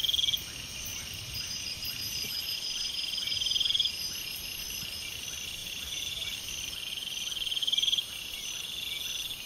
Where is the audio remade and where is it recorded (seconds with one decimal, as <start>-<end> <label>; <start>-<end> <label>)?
0.0-0.9 recorded; 0.9-4.6 remade; 4.6-5.6 recorded; 5.6-6.4 remade; 6.4-7.6 recorded; 7.6-8.5 remade; 8.5-9.5 recorded